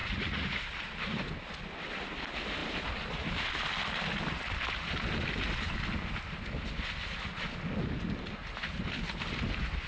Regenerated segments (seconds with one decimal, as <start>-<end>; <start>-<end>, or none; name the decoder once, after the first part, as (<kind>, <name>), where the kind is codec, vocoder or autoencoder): 0.0-0.6 (vocoder, Vocos)